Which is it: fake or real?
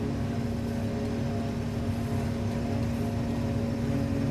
real